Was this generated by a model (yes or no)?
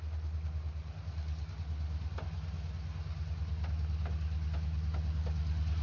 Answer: no